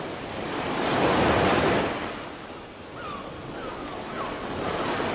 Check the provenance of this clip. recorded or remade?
recorded